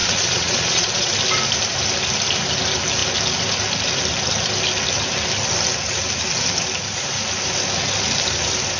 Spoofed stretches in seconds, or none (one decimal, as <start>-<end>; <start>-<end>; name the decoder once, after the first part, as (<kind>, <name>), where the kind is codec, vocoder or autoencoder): 0.0-1.1 (vocoder, Vocos)